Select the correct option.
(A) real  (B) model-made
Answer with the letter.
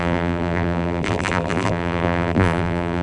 B